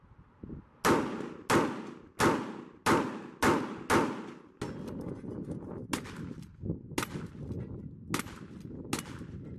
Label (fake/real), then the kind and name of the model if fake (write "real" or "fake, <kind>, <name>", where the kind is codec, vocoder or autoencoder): real